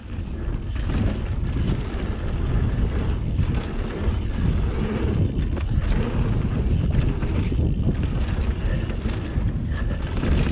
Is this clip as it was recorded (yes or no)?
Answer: yes